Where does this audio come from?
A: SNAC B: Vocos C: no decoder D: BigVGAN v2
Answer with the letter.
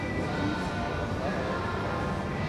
C